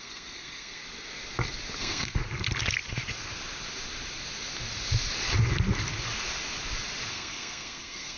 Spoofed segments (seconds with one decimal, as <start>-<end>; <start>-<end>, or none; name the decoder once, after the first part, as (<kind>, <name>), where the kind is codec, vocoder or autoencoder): 0.0-0.8 (codec, SNAC); 1.8-2.2; 7.1-8.2